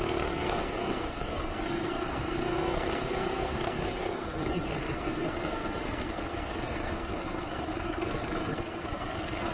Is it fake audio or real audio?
fake